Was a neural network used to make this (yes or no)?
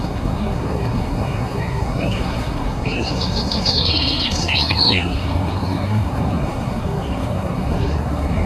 yes